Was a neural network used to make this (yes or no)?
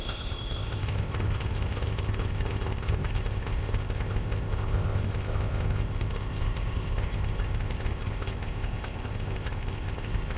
yes